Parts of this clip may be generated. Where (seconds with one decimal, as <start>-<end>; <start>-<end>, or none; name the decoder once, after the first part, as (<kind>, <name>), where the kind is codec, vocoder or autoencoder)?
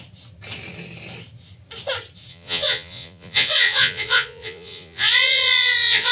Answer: 2.3-6.1 (vocoder, Vocos)